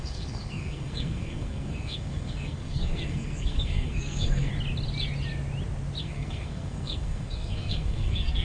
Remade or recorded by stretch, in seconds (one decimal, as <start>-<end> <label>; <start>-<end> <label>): 0.0-4.5 remade; 4.5-6.0 recorded; 6.0-8.4 remade